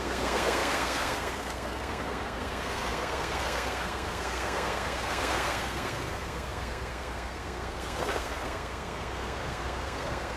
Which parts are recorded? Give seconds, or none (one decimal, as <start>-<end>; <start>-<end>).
none